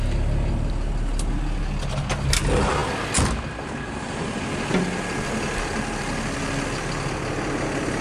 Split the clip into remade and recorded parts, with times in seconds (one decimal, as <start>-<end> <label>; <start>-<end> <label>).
0.0-8.0 recorded